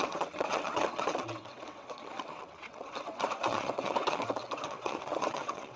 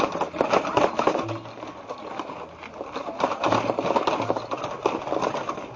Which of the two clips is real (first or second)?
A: second